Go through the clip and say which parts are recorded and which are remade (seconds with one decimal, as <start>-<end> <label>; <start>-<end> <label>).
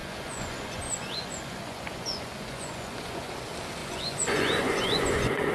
0.0-3.3 remade; 3.3-3.8 recorded; 3.8-5.5 remade